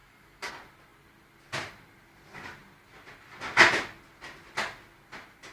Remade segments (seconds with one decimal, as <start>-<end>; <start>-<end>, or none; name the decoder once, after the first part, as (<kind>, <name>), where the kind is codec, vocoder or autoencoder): 0.0-0.5 (codec, DAC)